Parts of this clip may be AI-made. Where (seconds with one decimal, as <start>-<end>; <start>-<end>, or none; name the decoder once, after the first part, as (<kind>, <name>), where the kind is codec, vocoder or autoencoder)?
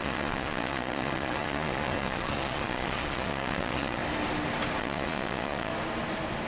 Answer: 0.0-4.0 (vocoder, Vocos); 4.8-5.7